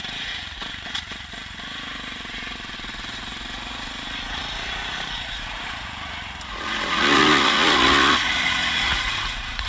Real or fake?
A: fake